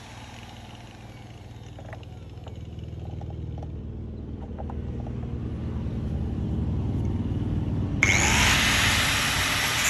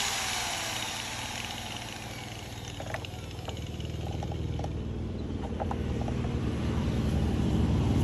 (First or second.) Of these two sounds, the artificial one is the second